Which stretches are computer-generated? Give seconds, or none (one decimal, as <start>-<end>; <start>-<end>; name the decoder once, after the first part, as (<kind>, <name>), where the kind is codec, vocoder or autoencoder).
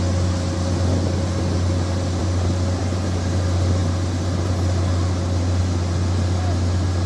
none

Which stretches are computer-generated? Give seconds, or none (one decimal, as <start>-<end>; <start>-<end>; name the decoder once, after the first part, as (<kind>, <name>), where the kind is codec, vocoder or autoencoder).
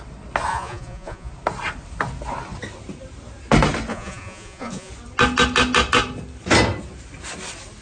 0.5-1.3 (vocoder, Vocos); 3.9-4.9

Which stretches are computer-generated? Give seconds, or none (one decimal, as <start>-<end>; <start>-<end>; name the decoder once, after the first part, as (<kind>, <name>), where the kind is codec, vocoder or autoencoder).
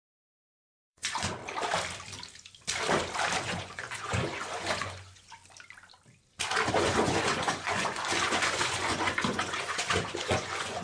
0.0-1.4 (vocoder, Vocos); 3.4-5.4; 6.7-10.8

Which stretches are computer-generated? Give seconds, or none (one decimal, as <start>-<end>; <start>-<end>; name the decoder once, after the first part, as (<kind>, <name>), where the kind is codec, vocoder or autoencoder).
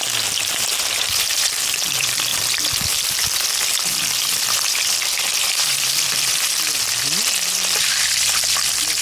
0.0-2.3 (vocoder, BigVGAN v2); 2.9-9.0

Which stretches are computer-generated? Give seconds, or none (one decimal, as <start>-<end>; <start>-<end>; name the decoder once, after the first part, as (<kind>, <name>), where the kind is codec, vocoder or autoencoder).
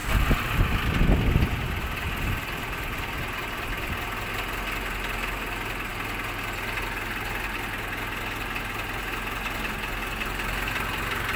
none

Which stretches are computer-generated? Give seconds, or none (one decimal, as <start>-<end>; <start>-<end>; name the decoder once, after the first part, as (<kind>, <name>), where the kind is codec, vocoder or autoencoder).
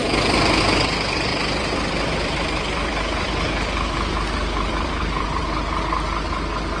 0.0-0.6 (vocoder, BigVGAN v2); 1.3-5.4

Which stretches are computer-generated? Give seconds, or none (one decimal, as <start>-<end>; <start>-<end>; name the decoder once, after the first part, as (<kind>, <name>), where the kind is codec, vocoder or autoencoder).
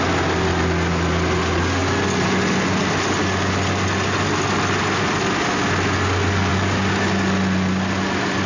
none